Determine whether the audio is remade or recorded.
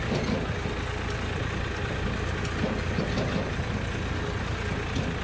recorded